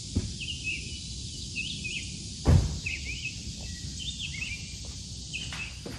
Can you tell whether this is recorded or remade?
recorded